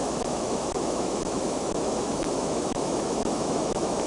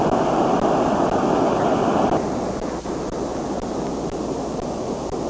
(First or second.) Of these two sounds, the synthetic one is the first